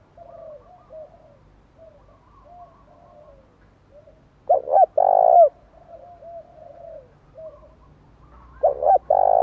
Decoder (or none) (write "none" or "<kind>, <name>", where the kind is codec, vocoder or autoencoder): none